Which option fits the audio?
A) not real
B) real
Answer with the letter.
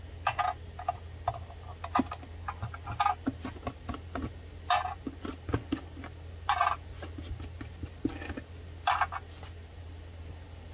B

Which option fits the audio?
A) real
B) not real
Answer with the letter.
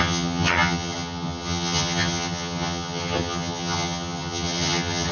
B